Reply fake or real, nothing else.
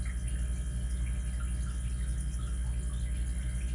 real